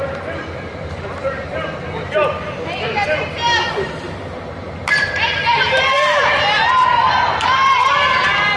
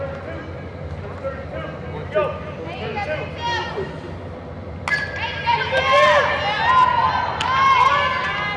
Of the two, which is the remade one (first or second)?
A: first